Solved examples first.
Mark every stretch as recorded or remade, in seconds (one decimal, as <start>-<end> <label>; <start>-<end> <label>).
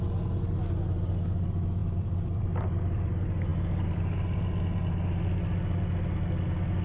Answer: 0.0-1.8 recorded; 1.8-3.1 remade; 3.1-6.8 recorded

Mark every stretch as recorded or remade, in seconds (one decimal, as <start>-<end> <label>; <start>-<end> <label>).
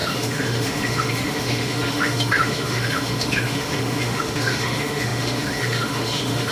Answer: 0.0-6.5 remade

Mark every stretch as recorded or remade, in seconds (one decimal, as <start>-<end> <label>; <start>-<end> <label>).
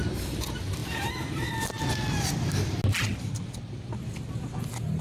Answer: 0.0-5.0 recorded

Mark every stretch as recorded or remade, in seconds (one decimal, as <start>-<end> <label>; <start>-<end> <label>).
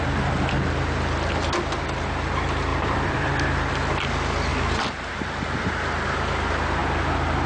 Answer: 0.0-2.7 recorded; 2.7-3.7 remade; 3.7-4.5 recorded; 4.5-5.1 remade; 5.1-7.5 recorded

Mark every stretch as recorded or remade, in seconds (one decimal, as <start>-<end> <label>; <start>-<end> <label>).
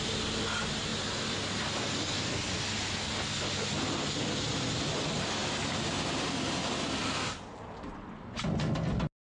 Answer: 0.0-9.3 recorded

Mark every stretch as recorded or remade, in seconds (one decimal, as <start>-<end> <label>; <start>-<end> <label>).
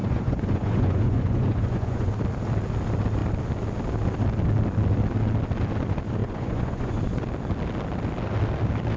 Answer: 0.0-2.1 remade; 2.1-6.2 recorded; 6.2-7.0 remade; 7.0-9.0 recorded